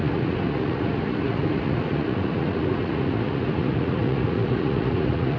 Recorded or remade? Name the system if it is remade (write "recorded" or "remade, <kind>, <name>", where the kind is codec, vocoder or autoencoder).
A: remade, vocoder, Vocos